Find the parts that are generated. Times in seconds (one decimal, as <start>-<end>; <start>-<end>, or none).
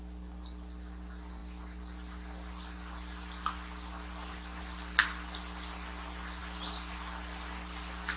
none